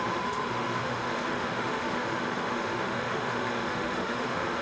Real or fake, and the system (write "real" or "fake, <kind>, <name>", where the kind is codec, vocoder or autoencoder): fake, autoencoder, DAC-VAE